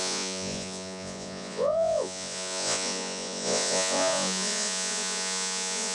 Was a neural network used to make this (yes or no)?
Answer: yes